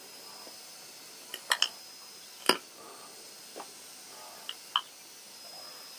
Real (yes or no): yes